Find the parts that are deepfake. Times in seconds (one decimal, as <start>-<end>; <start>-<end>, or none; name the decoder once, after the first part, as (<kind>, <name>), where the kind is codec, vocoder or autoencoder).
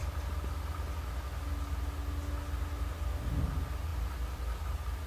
none